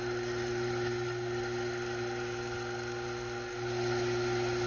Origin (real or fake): real